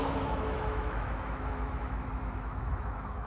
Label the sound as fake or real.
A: fake